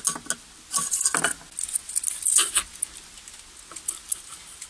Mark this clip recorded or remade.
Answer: recorded